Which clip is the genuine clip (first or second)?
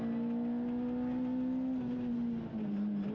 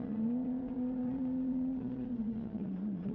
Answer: first